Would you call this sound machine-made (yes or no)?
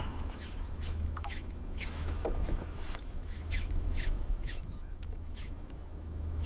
yes